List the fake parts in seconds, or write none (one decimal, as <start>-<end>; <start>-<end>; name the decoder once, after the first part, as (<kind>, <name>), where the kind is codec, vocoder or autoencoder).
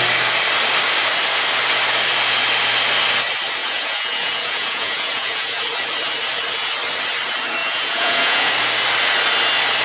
3.6-5.6 (vocoder, Vocos); 7.6-8.5